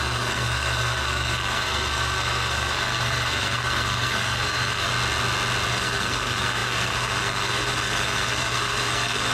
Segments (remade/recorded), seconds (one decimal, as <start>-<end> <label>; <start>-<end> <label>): 0.0-4.9 remade; 4.9-5.7 recorded; 5.7-9.3 remade